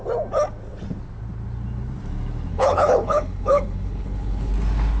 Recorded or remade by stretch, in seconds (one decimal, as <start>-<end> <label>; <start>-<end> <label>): 0.0-2.5 recorded; 2.5-4.5 remade; 4.5-5.0 recorded